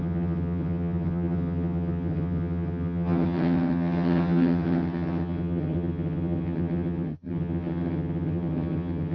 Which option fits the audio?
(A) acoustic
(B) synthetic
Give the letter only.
B